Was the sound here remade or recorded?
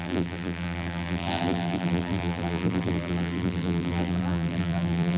remade